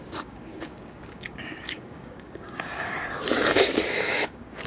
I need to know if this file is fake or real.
fake